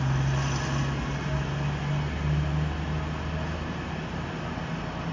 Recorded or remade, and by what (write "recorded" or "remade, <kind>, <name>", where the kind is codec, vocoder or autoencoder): recorded